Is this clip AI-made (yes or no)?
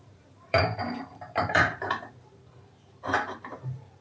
yes